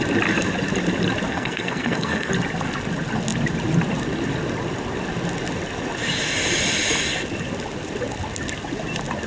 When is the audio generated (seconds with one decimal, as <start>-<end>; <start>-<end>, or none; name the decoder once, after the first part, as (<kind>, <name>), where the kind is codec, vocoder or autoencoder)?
1.3-2.3 (codec, SNAC)